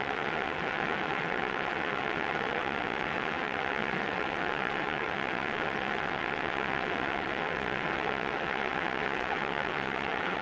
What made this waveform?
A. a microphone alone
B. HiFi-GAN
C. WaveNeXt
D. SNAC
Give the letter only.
C